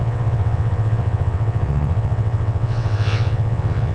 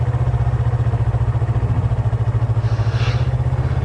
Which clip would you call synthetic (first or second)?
first